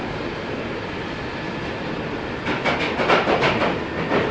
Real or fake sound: real